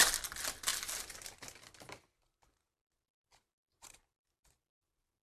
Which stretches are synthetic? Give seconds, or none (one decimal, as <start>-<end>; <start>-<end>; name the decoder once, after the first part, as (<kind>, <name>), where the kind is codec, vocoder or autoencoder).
none